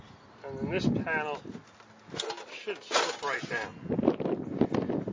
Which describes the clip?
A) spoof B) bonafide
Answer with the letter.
B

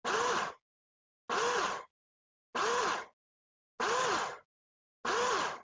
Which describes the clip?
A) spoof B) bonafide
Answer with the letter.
B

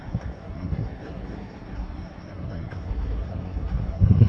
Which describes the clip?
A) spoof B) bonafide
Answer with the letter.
A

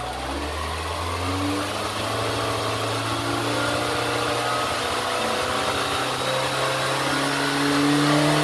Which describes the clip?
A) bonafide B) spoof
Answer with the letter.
A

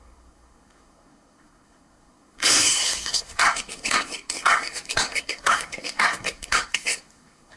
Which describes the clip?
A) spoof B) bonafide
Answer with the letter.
A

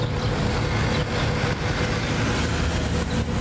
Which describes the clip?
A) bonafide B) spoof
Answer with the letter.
A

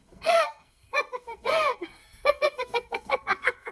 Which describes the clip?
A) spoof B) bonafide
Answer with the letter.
A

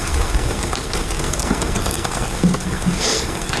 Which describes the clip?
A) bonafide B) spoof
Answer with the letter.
B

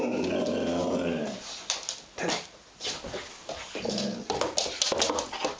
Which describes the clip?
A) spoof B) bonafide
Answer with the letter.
B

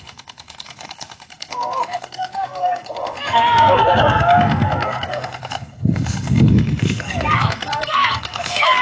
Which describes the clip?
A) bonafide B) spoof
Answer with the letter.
B